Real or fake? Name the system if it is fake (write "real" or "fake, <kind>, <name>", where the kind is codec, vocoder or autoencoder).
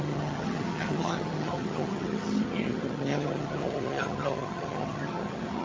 fake, vocoder, HiFi-GAN